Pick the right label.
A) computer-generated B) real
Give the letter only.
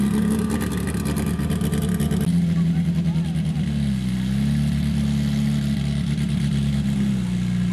B